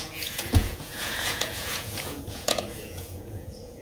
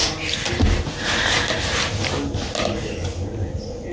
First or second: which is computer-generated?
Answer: first